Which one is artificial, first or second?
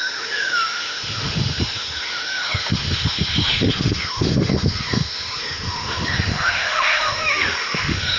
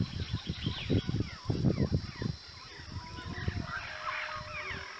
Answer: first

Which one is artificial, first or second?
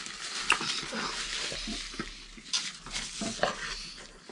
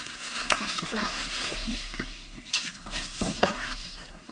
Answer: second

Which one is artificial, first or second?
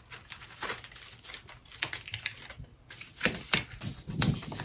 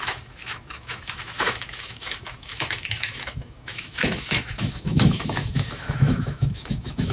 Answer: second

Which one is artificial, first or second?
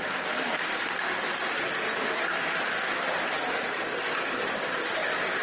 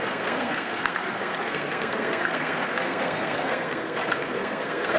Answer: second